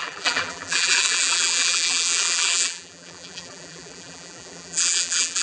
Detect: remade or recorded remade